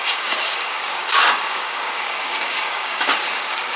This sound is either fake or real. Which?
fake